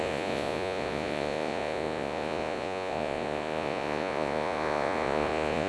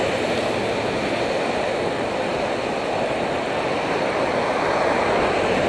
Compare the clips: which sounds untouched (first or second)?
second